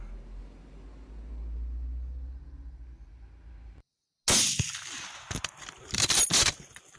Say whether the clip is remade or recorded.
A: recorded